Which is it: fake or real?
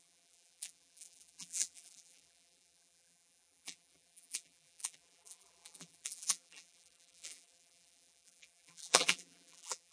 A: fake